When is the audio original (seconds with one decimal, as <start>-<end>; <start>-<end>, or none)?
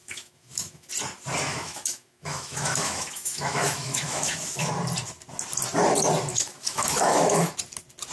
0.9-1.5; 4.7-6.3; 7.5-8.1